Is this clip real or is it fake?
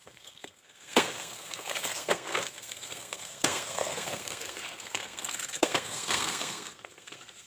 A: fake